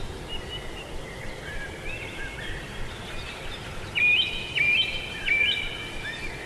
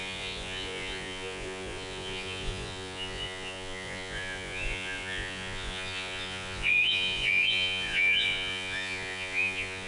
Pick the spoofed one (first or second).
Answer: second